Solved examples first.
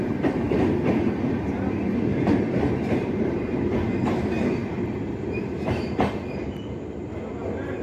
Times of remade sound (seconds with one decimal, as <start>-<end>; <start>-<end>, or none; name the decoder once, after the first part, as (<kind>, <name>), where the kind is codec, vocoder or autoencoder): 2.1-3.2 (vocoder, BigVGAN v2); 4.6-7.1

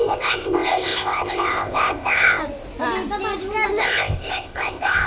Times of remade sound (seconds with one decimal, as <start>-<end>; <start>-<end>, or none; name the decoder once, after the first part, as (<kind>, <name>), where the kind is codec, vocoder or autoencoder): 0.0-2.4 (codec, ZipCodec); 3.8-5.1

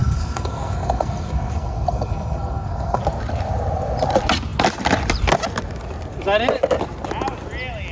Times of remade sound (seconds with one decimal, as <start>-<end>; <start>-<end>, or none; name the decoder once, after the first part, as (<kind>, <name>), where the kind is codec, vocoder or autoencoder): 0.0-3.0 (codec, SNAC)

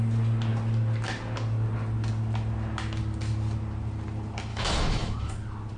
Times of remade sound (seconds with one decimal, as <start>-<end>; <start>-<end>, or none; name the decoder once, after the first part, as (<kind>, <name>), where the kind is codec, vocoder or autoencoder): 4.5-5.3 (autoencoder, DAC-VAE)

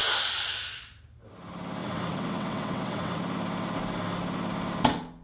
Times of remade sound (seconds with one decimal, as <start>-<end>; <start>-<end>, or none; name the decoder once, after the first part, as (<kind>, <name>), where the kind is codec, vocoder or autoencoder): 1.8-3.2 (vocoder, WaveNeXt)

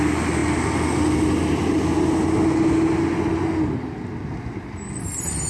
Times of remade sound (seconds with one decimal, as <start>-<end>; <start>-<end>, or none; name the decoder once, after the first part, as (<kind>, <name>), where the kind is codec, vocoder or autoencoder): none

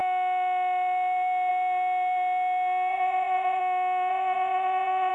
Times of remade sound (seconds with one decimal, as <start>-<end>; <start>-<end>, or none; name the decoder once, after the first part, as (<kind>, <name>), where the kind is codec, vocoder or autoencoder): 2.9-3.6 (vocoder, Vocos); 4.1-5.1

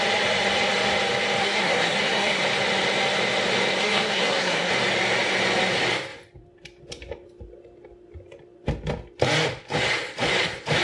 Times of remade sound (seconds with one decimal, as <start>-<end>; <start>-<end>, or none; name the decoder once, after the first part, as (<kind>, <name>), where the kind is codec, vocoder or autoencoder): 1.4-2.4 (codec, SNAC); 3.8-4.7